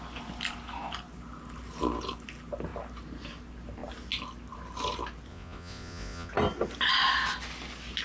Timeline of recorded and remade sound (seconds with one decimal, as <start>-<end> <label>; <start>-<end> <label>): 0.0-5.3 recorded; 5.3-6.3 remade; 6.3-8.0 recorded